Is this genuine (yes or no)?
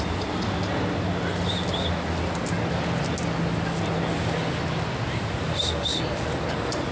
yes